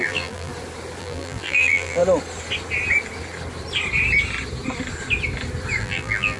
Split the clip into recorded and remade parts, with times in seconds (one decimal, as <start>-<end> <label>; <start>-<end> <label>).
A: 0.0-0.5 remade; 0.5-1.0 recorded; 1.0-2.0 remade; 2.0-5.8 recorded; 5.8-6.4 remade